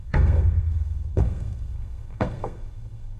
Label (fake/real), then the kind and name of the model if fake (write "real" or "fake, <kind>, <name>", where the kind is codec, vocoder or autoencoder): fake, codec, SNAC